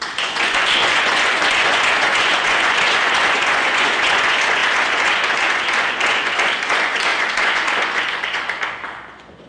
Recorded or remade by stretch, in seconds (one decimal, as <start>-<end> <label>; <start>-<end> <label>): 0.0-9.5 remade